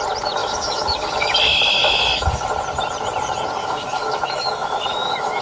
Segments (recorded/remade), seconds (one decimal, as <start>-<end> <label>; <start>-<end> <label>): 0.0-0.4 recorded; 0.4-2.5 remade; 2.5-3.6 recorded; 3.6-5.4 remade